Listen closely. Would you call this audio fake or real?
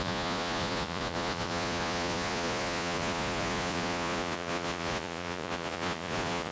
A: fake